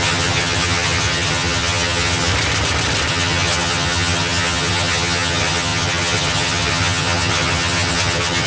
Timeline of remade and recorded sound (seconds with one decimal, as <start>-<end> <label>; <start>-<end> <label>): 0.0-2.3 remade; 2.3-3.1 recorded; 3.1-8.5 remade